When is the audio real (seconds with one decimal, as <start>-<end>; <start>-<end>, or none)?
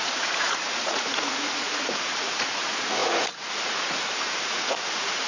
none